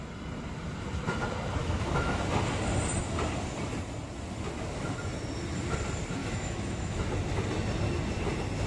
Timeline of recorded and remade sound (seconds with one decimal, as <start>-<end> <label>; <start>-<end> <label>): 0.0-1.6 recorded; 1.6-2.2 remade; 2.2-6.2 recorded; 6.2-7.0 remade; 7.0-8.7 recorded